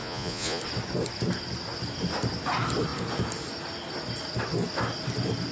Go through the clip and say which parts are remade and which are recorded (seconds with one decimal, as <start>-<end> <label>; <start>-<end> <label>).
0.0-0.6 remade; 0.6-5.5 recorded